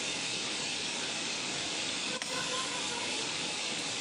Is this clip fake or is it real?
fake